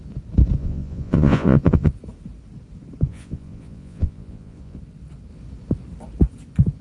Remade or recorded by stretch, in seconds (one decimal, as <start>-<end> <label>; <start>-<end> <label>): 0.0-0.6 recorded; 0.6-1.9 remade; 1.9-3.1 recorded; 3.1-4.8 remade; 4.8-6.8 recorded